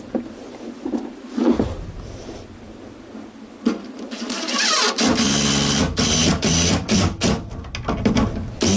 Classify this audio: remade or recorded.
recorded